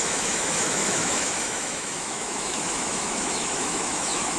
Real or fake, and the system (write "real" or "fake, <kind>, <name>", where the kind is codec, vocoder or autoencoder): fake, autoencoder, DAC-VAE